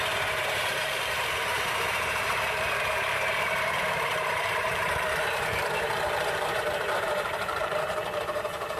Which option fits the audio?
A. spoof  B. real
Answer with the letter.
A